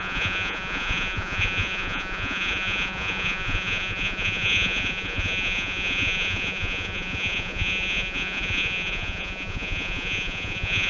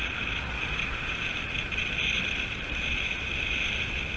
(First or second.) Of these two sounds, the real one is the second